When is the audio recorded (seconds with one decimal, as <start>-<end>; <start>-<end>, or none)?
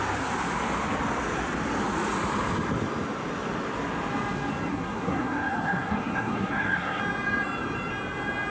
0.0-4.7; 7.0-8.5